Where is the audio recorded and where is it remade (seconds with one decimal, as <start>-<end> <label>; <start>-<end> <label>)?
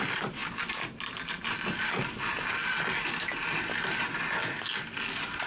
0.0-5.5 recorded